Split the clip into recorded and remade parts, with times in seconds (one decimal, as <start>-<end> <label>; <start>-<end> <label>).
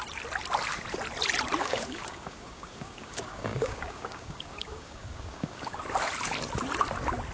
0.0-1.6 recorded; 1.6-5.8 remade; 5.8-7.3 recorded